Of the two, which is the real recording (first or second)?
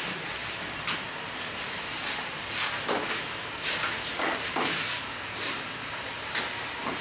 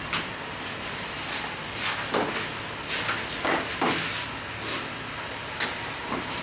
second